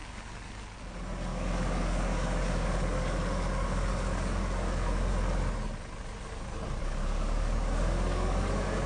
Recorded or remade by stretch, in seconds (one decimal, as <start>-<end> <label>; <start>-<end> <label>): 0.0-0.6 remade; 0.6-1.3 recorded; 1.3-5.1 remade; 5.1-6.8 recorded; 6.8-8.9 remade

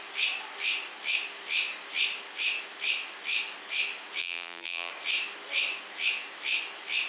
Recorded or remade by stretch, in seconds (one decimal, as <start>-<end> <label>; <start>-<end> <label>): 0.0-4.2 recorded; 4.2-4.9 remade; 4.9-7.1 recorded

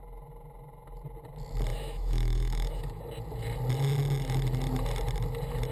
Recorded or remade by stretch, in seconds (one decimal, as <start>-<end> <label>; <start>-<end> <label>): 0.0-1.7 recorded; 1.7-3.0 remade; 3.0-5.7 recorded

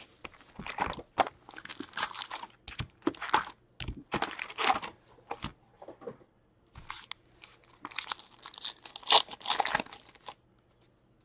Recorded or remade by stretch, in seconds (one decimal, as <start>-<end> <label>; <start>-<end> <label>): 0.0-11.2 recorded